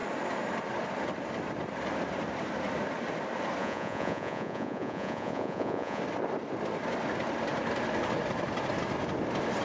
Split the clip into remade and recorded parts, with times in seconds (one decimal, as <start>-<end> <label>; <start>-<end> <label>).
0.0-3.6 recorded; 3.6-6.0 remade; 6.0-9.6 recorded